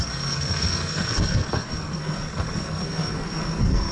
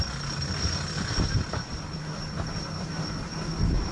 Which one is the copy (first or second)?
first